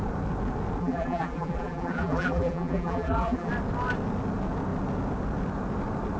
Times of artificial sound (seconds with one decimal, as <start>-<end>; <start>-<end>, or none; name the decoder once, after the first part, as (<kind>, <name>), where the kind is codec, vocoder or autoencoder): 0.8-3.5 (vocoder, BigVGAN v2)